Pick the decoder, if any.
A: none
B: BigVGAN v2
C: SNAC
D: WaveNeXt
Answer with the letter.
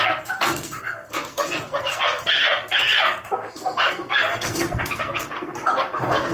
C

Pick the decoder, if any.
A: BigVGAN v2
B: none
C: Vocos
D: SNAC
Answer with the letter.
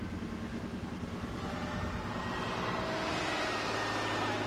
B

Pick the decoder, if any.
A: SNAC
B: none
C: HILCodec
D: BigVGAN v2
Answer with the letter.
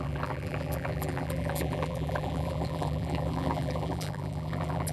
D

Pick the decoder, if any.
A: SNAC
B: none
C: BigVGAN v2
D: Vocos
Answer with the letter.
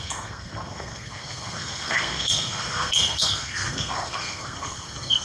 A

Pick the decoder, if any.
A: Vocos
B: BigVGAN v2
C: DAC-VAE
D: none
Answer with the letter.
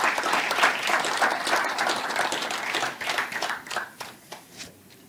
B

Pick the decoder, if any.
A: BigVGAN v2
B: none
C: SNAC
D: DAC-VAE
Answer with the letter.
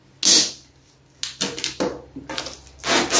B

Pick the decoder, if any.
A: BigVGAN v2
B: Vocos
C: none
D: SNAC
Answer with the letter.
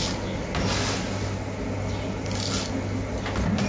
C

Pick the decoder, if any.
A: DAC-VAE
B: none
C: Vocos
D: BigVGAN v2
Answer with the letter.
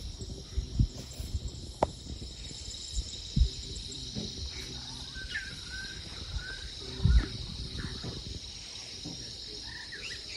B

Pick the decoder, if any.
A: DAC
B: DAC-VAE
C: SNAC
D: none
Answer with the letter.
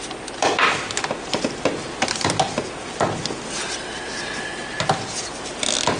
D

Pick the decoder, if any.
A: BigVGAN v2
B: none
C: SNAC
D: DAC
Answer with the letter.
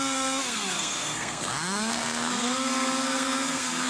C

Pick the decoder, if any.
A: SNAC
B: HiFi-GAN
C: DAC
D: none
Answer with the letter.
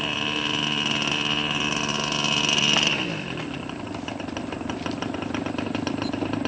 D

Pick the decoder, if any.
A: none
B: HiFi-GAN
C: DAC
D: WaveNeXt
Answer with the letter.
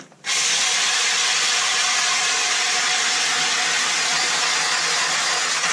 A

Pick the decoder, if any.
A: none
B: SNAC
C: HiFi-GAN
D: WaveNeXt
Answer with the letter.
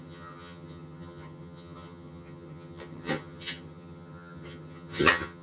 C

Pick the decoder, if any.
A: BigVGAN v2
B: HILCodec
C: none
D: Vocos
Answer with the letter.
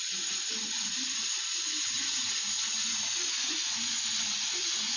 A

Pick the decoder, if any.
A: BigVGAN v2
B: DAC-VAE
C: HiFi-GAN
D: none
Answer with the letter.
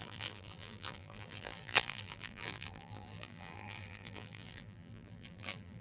A